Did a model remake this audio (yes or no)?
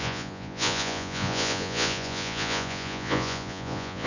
yes